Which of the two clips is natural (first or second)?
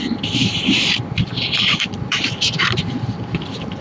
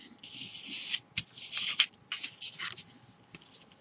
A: second